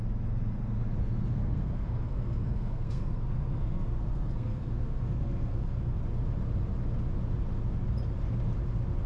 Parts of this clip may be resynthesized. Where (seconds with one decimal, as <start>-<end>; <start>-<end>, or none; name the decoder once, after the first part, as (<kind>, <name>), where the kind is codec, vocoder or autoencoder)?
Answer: 1.3-6.0 (codec, SNAC)